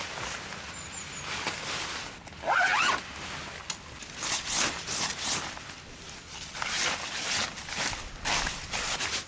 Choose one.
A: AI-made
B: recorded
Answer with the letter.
B